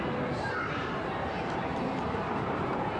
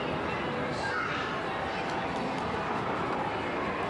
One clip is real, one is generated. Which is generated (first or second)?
first